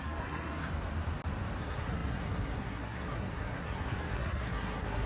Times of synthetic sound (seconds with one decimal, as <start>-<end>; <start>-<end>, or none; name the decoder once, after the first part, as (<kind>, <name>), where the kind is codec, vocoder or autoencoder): 0.0-0.7 (codec, SNAC); 1.6-5.1